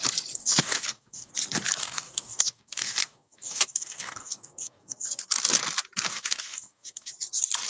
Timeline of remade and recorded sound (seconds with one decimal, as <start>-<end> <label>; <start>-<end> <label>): 0.0-0.4 recorded; 0.4-1.3 remade; 1.3-1.8 recorded; 1.8-5.2 remade; 5.2-6.1 recorded; 6.1-7.1 remade; 7.1-7.7 recorded